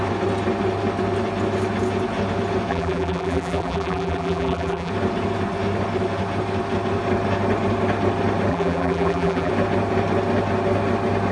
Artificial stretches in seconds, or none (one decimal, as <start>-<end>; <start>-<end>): 2.7-4.9; 8.5-9.5